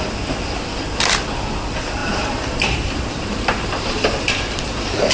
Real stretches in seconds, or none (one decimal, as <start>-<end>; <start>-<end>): 0.0-2.0